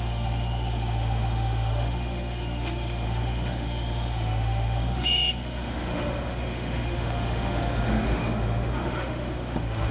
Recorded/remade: remade